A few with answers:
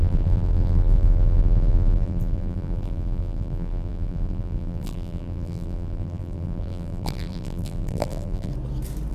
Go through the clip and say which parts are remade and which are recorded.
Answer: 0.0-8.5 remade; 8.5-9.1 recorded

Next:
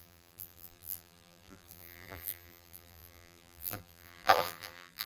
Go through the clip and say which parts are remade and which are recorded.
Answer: 0.0-5.1 remade

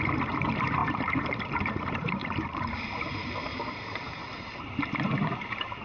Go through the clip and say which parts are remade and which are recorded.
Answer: 0.0-5.8 remade

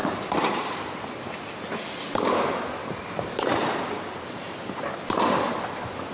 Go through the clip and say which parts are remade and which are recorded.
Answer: 0.0-1.0 remade; 1.0-2.8 recorded; 2.8-4.6 remade; 4.6-6.1 recorded

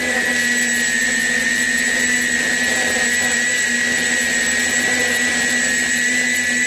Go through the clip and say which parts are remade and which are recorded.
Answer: 0.0-6.7 recorded

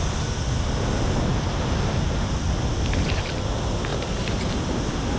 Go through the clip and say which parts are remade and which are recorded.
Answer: 0.0-1.3 recorded; 1.3-2.4 remade; 2.4-3.9 recorded; 3.9-4.8 remade; 4.8-5.2 recorded

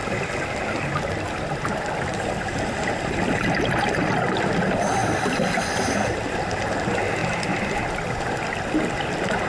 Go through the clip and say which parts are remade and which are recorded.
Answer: 0.0-5.0 recorded; 5.0-6.6 remade; 6.6-7.2 recorded; 7.2-7.9 remade; 7.9-9.5 recorded

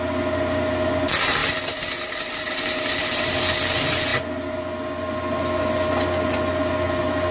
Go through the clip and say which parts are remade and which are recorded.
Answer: 0.0-1.4 recorded; 1.4-3.2 remade; 3.2-7.3 recorded